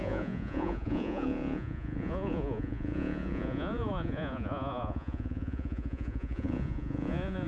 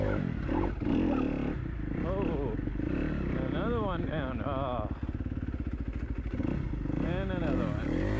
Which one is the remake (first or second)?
first